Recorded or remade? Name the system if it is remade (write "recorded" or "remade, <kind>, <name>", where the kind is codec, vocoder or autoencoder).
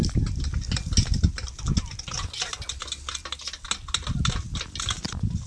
recorded